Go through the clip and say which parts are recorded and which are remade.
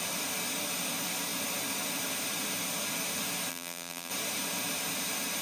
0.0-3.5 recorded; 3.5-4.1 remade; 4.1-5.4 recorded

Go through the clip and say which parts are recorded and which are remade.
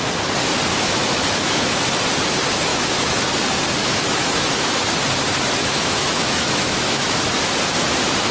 0.0-0.7 recorded; 0.7-1.8 remade; 1.8-2.7 recorded; 2.7-3.3 remade; 3.3-3.8 recorded; 3.8-4.7 remade; 4.7-5.6 recorded; 5.6-7.2 remade; 7.2-8.3 recorded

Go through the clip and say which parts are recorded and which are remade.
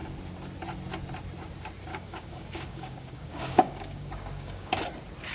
0.0-1.9 recorded; 1.9-4.8 remade; 4.8-5.3 recorded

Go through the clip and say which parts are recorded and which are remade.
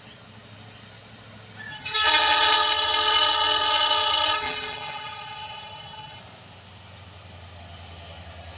0.0-1.7 recorded; 1.7-6.2 remade; 6.2-8.6 recorded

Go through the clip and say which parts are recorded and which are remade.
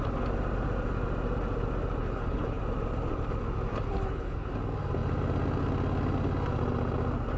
0.0-2.0 recorded; 2.0-2.6 remade; 2.6-3.7 recorded; 3.7-4.5 remade; 4.5-7.4 recorded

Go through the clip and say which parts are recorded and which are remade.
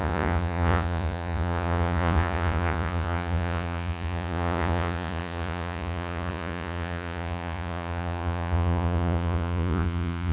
0.0-10.3 remade